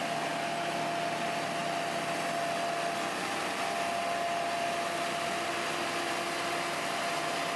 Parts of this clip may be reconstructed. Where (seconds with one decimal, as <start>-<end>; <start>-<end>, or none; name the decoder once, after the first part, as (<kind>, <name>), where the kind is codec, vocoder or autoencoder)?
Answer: none